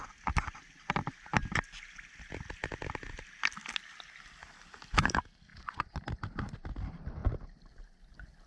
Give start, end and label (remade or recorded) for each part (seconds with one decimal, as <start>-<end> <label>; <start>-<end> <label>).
0.0-5.5 recorded; 5.5-6.0 remade; 6.0-8.5 recorded